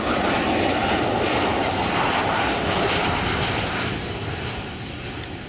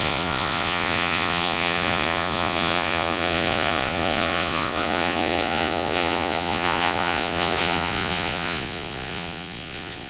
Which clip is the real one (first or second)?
first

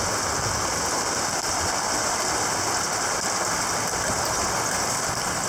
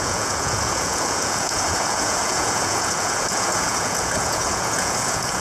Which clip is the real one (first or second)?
first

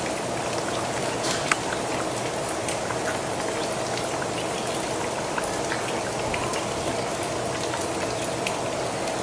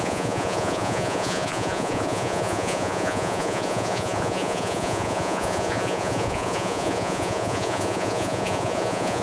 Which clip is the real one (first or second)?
first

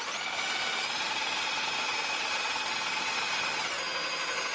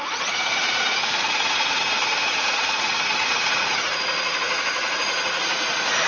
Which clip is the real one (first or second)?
first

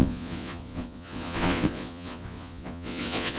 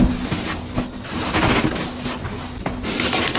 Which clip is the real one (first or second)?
second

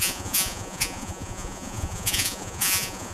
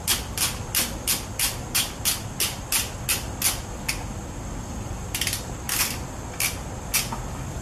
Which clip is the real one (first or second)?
second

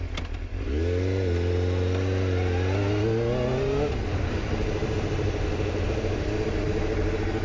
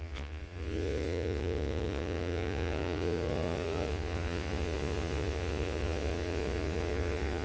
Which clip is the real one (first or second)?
first